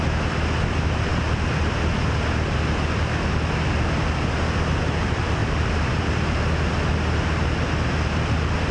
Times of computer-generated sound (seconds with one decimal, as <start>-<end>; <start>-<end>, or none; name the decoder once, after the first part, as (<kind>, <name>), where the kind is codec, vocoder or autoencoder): 5.4-6.0 (vocoder, BigVGAN v2)